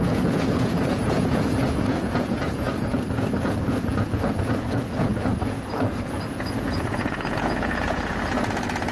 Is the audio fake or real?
fake